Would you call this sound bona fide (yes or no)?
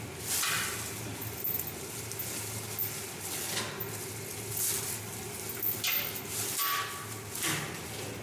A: yes